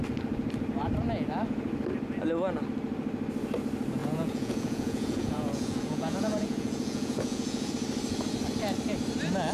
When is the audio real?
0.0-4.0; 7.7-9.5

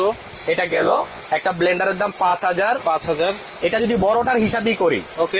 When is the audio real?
0.0-0.7; 1.2-5.4

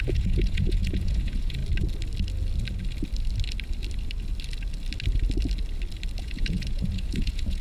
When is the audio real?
1.6-6.2

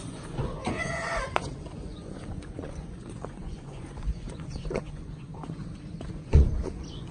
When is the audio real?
5.6-6.1

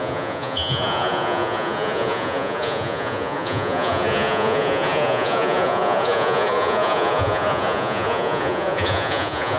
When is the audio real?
none